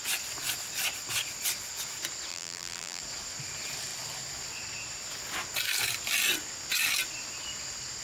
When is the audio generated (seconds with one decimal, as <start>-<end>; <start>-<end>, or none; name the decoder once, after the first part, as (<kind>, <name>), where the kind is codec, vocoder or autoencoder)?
2.3-3.0 (vocoder, BigVGAN v2)